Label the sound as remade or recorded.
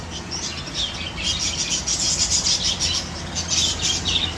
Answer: recorded